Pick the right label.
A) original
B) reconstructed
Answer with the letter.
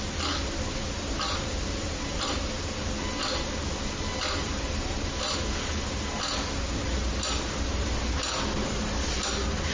A